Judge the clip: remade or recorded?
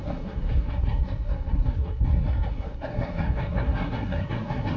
remade